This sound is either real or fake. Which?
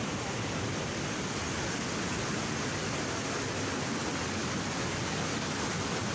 real